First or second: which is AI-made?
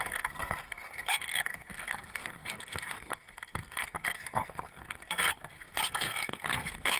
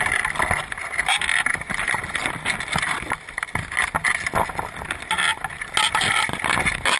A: first